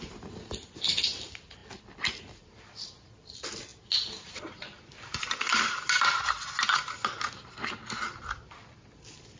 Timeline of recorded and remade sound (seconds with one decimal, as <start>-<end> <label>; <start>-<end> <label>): 0.0-9.4 recorded